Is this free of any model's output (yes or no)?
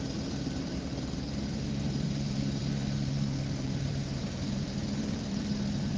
no